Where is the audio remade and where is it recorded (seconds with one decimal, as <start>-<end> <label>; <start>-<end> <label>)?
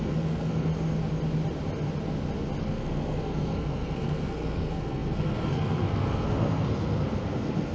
0.0-0.7 remade; 0.7-2.6 recorded; 2.6-7.7 remade